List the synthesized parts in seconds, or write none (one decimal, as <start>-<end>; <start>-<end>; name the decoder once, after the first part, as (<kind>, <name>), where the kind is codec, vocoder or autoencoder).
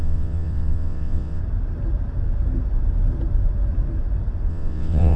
0.0-1.4 (vocoder, WaveNeXt); 4.5-5.2